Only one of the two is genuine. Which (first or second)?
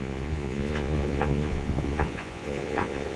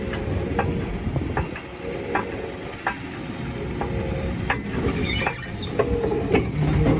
second